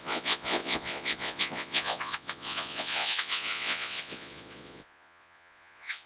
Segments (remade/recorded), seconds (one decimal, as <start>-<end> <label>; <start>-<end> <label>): 0.0-6.1 remade